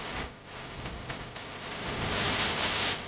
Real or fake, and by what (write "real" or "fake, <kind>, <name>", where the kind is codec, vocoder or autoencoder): real